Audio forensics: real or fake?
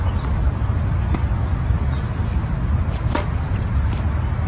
real